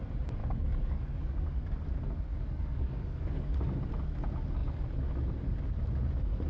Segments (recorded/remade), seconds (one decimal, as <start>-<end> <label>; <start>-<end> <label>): 0.0-0.4 recorded; 0.4-1.6 remade; 1.6-2.3 recorded; 2.3-3.6 remade; 3.6-6.5 recorded